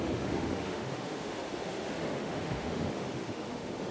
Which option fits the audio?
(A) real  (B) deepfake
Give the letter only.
B